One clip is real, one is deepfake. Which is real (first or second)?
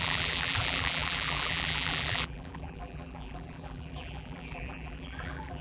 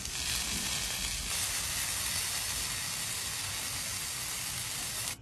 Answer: second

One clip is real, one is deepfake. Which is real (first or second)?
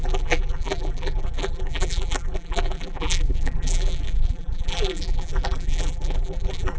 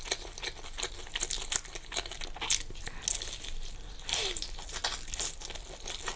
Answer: second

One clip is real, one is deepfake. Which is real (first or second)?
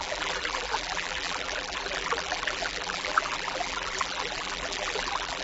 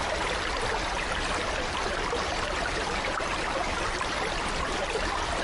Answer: second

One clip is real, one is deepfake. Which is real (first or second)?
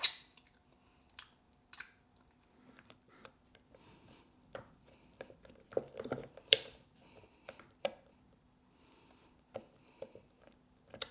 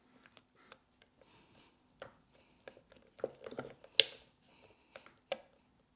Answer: second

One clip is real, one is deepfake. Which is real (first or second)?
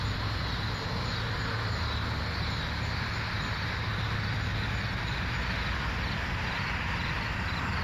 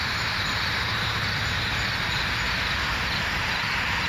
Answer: first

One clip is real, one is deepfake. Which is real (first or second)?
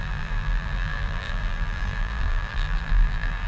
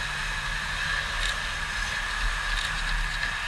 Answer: second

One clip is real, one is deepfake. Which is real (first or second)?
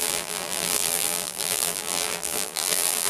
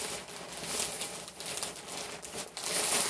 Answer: second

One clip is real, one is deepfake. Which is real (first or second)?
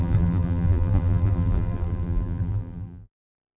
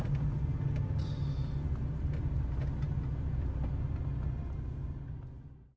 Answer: second